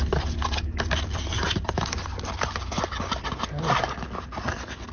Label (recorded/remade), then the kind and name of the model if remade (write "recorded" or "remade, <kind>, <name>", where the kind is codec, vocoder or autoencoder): recorded